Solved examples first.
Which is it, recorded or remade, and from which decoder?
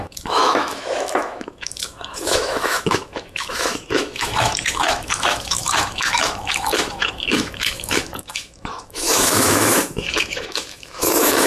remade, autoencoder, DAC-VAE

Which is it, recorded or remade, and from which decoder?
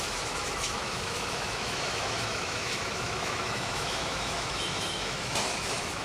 remade, autoencoder, DAC-VAE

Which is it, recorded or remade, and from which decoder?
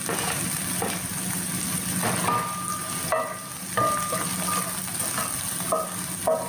recorded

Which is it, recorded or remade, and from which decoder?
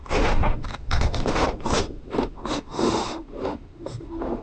remade, autoencoder, DAC-VAE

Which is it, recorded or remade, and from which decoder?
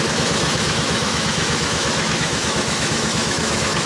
remade, autoencoder, DAC-VAE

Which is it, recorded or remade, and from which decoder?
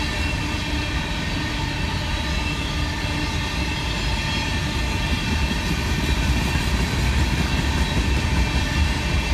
recorded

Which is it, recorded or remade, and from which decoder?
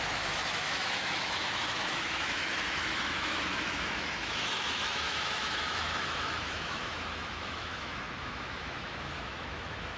remade, autoencoder, DAC-VAE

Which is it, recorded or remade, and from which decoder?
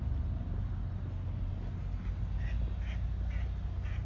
recorded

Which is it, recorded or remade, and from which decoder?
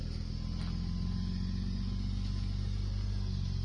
recorded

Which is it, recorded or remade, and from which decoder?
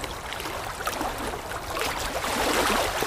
recorded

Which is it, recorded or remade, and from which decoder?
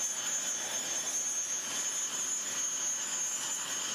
recorded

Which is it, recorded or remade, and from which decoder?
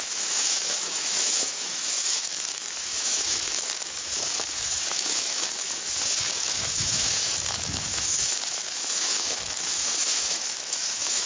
remade, autoencoder, DAC-VAE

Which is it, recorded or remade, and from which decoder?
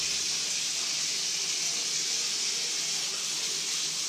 recorded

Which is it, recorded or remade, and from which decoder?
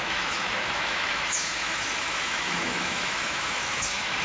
remade, autoencoder, DAC-VAE